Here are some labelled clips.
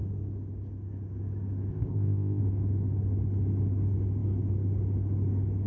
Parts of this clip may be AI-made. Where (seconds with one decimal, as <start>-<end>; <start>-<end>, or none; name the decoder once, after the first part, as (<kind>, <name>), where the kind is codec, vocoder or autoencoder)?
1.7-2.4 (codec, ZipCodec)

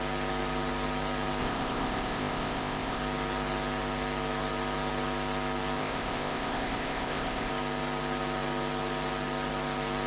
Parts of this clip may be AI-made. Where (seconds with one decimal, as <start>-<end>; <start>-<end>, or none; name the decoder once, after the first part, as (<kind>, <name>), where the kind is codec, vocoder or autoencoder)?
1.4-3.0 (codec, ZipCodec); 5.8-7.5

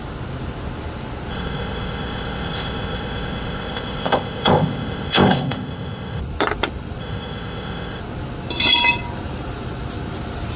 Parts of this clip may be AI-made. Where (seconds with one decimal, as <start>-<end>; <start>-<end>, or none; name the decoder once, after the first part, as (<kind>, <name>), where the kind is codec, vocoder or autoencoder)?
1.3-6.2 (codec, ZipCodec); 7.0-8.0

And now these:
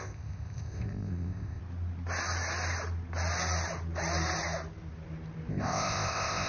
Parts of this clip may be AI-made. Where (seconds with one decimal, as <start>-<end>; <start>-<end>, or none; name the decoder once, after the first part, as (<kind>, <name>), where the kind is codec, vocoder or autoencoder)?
0.0-1.6 (codec, ZipCodec); 5.5-6.5

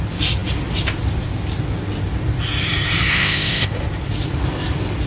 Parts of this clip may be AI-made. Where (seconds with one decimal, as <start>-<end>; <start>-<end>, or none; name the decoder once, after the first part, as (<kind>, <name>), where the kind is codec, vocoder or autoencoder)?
3.1-3.7 (codec, ZipCodec)

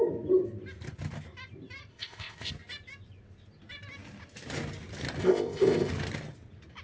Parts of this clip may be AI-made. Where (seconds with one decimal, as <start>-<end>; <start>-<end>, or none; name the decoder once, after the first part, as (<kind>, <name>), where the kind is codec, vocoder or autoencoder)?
1.9-2.5 (codec, ZipCodec); 5.2-5.9

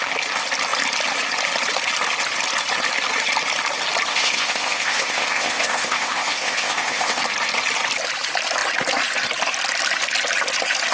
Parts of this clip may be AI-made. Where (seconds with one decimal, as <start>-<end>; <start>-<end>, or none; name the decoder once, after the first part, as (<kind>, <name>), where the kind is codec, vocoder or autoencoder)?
4.1-7.2 (codec, ZipCodec)